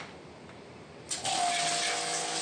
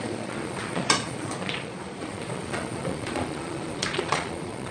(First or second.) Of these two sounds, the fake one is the second